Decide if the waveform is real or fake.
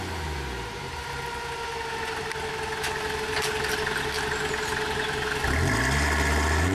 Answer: real